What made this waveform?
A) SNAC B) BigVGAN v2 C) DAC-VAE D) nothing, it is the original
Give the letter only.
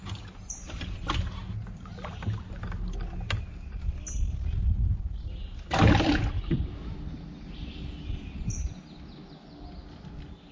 D